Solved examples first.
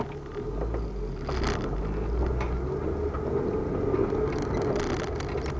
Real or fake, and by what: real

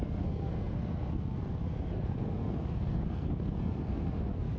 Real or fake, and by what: fake, codec, SNAC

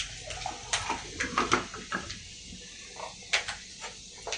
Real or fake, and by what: real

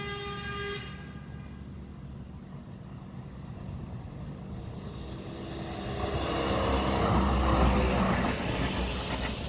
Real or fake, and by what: real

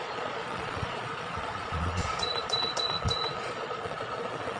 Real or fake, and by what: fake, vocoder, Vocos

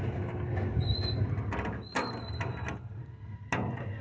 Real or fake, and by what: real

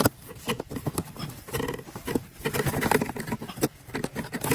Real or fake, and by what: real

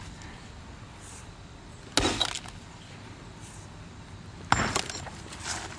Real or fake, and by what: real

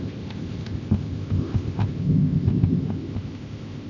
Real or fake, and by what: fake, codec, ZipCodec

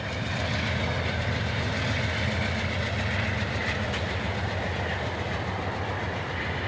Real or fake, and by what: real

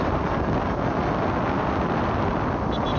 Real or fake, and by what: real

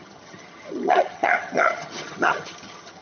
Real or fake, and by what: fake, vocoder, HiFi-GAN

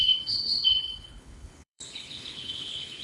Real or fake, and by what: fake, codec, HILCodec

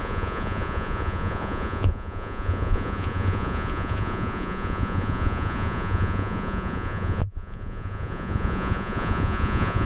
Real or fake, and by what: fake, vocoder, Vocos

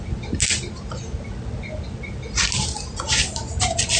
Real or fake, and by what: real